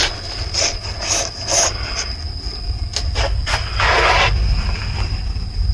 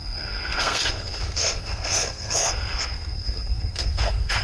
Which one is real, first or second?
first